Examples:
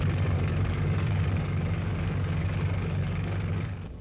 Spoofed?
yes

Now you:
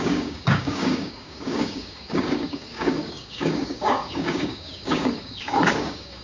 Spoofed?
yes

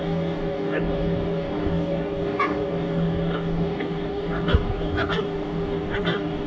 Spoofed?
yes